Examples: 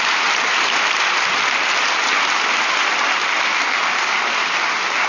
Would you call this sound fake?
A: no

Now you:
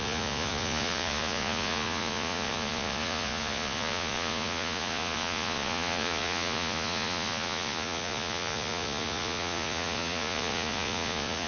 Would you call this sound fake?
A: yes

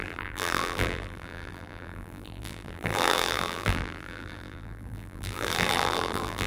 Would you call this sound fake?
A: yes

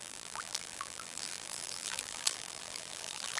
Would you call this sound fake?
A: yes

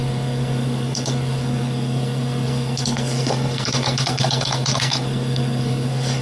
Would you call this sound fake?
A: yes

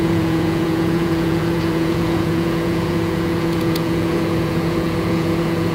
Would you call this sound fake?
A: yes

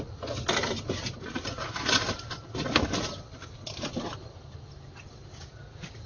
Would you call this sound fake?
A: no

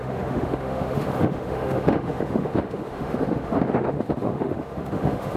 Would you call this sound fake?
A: yes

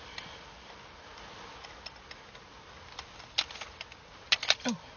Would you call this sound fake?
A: no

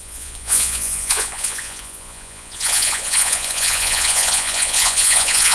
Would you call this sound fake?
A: yes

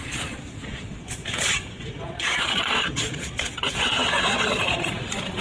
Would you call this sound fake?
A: yes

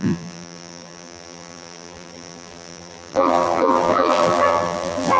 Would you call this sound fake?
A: yes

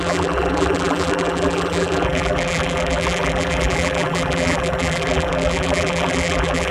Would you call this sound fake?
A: yes